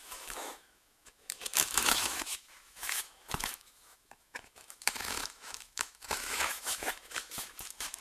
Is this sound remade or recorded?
remade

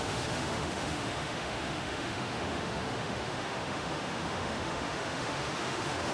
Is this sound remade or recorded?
remade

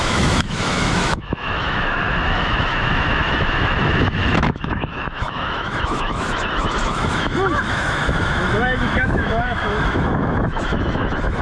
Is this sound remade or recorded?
remade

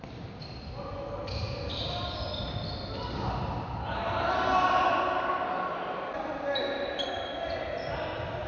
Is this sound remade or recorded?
recorded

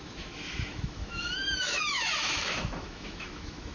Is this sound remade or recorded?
remade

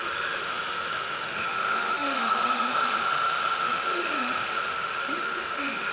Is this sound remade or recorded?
remade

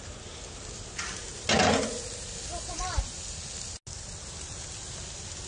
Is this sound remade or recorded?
recorded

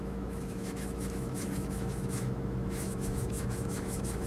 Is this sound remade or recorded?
remade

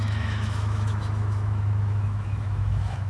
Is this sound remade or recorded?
remade